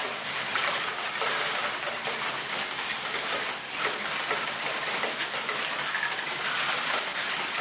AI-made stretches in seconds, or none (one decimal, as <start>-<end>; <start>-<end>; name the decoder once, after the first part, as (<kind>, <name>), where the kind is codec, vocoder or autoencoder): none